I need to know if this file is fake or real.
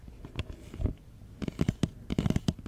real